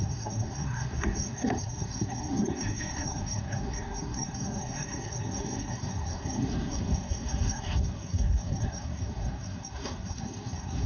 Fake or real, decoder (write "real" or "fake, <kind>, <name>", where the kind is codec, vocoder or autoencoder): fake, codec, SNAC